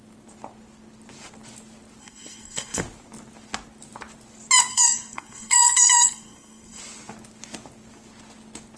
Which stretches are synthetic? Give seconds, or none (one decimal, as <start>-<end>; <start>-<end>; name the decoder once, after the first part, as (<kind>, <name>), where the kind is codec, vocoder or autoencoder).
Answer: 2.0-2.8 (codec, SNAC); 4.7-6.8